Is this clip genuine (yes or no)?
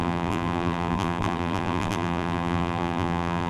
no